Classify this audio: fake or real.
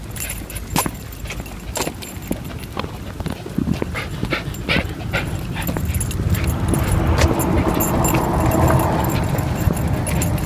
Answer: real